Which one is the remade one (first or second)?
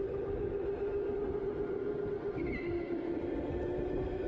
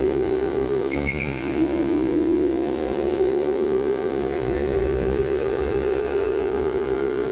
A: second